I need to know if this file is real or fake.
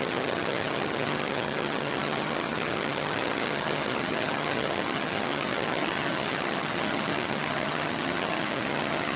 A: fake